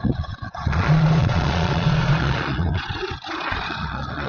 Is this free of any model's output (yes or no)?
no